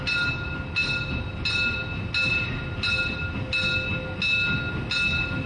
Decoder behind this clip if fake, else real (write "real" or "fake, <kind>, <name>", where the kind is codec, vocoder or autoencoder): real